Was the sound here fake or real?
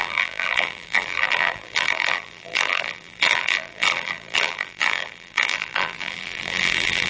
fake